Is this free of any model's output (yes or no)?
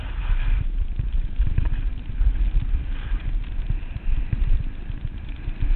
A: yes